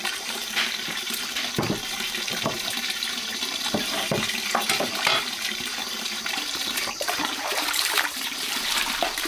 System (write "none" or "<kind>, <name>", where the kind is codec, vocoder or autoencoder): vocoder, BigVGAN v2